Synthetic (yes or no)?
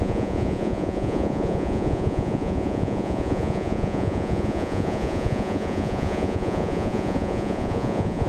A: yes